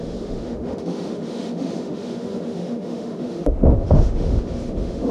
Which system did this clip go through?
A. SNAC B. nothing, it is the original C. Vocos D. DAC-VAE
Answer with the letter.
D